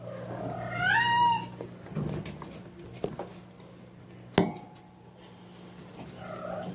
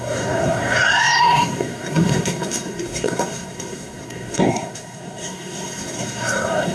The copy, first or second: second